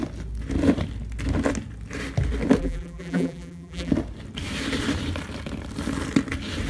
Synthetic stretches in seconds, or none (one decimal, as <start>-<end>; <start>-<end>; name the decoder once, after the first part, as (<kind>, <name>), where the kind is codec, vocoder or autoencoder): 2.6-3.9 (vocoder, BigVGAN v2)